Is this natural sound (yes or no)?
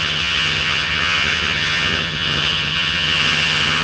no